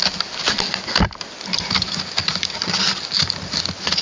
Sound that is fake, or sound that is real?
real